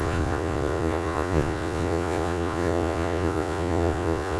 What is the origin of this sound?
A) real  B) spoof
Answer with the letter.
B